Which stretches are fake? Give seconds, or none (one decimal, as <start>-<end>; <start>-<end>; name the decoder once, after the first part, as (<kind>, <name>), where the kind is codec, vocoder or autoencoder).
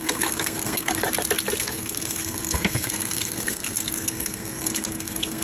0.0-1.0 (codec, SNAC); 1.6-5.4